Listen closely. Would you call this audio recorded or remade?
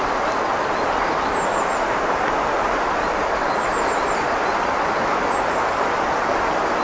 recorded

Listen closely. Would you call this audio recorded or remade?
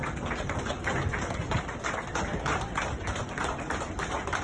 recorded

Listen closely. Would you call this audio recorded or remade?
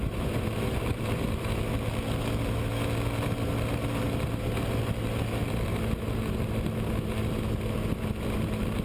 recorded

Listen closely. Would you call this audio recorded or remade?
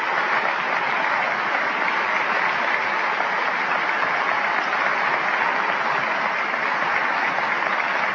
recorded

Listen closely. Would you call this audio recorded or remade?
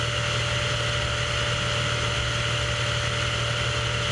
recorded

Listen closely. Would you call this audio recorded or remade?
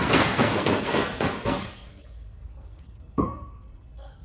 remade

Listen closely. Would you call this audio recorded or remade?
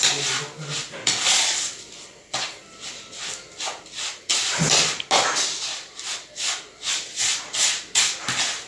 recorded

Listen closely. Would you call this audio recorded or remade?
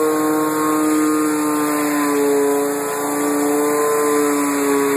recorded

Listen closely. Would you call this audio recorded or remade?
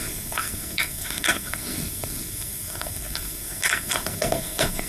remade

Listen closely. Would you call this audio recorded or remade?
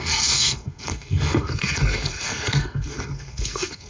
remade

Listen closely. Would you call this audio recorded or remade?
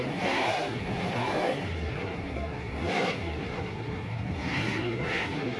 remade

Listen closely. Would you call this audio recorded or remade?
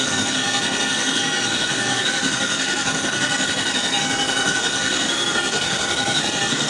remade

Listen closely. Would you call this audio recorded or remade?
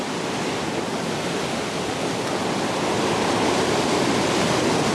recorded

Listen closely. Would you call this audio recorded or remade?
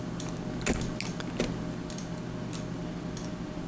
recorded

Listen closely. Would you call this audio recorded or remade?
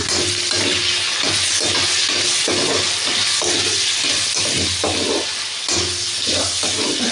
recorded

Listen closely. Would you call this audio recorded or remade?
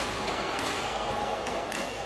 remade